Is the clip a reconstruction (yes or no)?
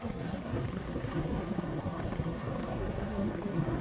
yes